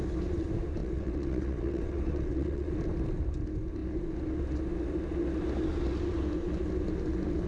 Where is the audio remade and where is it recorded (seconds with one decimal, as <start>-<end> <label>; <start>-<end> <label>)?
0.0-0.8 recorded; 0.8-2.7 remade; 2.7-7.5 recorded